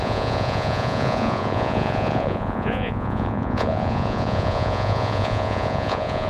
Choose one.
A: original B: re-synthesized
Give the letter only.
B